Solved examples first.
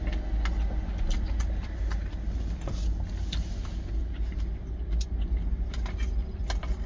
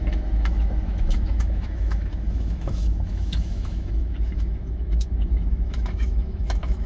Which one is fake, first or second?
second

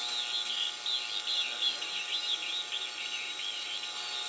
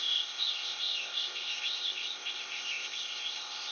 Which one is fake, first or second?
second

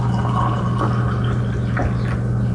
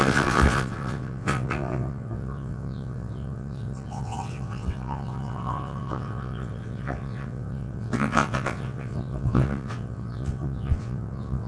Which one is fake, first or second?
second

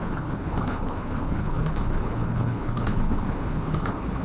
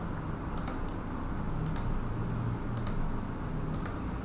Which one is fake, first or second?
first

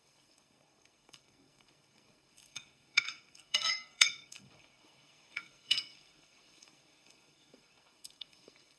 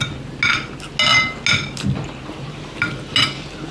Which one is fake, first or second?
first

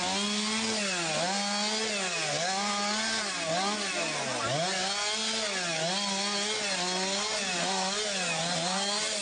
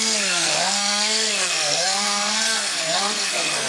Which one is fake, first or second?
second